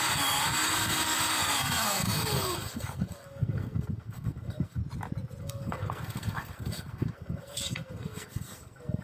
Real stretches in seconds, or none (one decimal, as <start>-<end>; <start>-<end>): 4.8-5.4